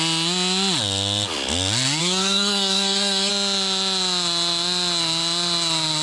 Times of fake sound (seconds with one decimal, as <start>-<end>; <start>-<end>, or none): 2.0-3.3